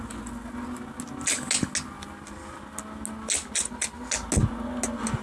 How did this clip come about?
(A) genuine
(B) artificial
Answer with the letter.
A